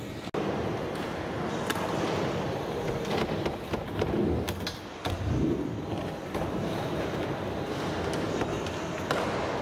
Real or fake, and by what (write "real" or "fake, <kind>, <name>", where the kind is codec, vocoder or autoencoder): real